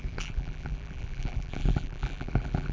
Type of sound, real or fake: fake